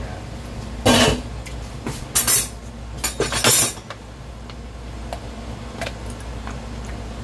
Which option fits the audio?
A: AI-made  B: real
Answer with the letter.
B